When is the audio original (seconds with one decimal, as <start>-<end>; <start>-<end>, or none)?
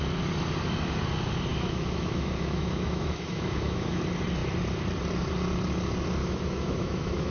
0.0-1.5; 4.0-6.2